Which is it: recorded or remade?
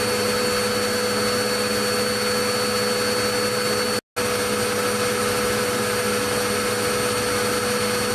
recorded